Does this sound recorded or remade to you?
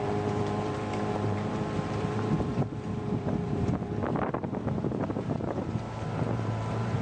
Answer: remade